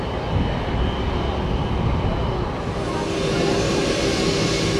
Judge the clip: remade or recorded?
recorded